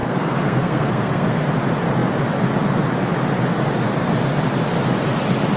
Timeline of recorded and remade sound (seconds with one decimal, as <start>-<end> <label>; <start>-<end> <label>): 0.0-1.4 remade; 1.4-5.6 recorded